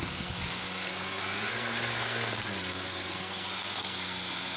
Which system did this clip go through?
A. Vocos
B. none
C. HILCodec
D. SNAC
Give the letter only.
D